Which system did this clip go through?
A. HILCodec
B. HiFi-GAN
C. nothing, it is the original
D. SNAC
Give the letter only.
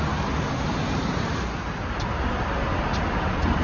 C